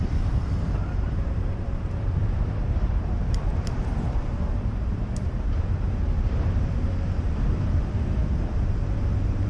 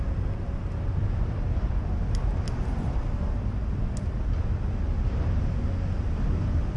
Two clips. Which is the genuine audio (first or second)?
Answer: second